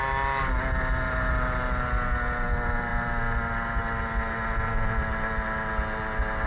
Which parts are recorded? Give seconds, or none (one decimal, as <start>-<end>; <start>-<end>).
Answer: 0.0-6.5